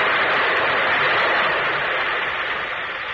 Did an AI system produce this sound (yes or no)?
no